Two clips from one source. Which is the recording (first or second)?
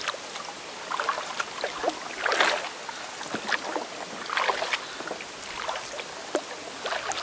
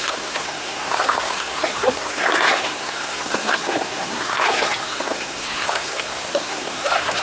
first